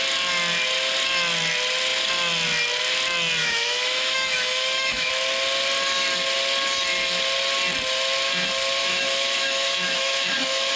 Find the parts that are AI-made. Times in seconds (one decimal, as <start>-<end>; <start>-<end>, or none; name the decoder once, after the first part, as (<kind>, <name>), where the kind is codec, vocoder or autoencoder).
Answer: 3.4-5.1 (autoencoder, DAC-VAE); 8.8-10.8